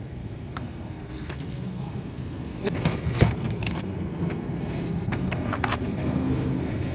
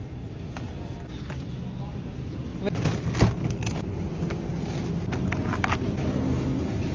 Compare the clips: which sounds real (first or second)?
second